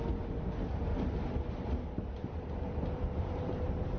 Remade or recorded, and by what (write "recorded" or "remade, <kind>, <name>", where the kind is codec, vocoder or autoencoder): recorded